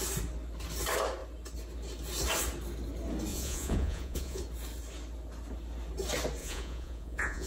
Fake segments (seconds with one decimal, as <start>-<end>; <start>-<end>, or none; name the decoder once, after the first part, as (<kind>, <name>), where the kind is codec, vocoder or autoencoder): 3.3-4.4 (vocoder, Vocos); 6.4-7.5